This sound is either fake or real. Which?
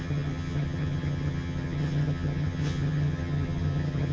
fake